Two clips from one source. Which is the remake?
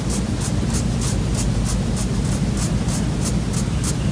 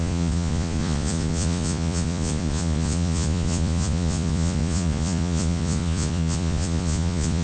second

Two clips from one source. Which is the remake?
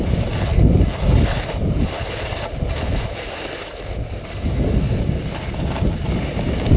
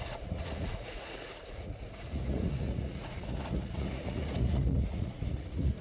second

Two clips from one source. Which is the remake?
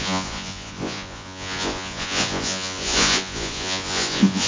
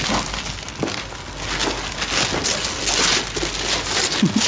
first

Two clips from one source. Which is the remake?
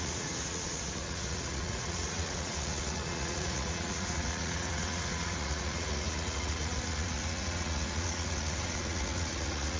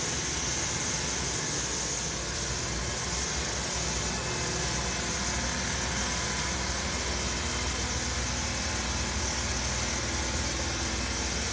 first